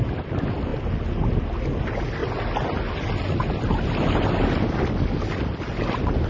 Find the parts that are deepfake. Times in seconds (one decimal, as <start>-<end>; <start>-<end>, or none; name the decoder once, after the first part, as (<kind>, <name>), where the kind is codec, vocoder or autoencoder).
none